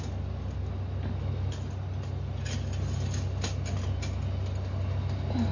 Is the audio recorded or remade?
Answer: recorded